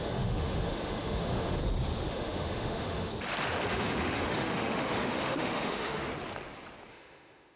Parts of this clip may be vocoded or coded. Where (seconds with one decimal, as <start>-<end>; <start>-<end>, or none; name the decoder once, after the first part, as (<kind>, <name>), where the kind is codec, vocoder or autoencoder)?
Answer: 0.0-1.6 (autoencoder, DAC-VAE); 2.1-3.1; 3.7-6.1; 6.9-7.6